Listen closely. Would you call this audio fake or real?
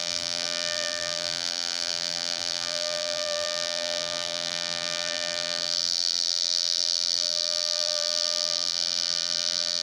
fake